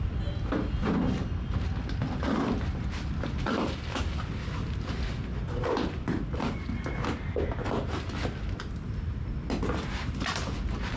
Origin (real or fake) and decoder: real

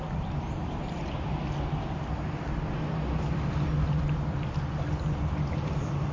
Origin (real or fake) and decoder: real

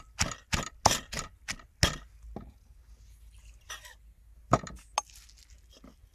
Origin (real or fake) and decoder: real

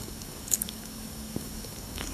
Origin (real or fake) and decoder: fake, codec, DAC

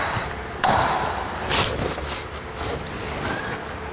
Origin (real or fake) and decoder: real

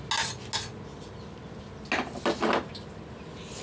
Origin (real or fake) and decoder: real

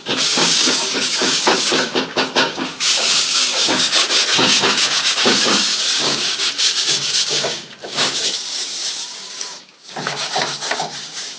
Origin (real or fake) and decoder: fake, codec, DAC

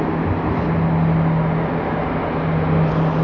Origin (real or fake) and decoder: real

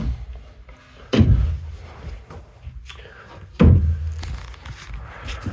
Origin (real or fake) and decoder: real